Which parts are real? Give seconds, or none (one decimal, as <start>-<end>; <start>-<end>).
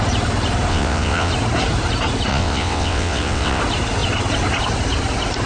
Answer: 0.0-0.7; 1.3-2.3; 3.6-5.5